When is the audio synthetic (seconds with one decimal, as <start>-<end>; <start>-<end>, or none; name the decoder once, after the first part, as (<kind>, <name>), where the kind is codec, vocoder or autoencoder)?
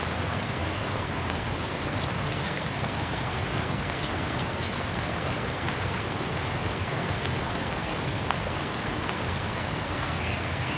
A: 0.0-10.8 (codec, SNAC)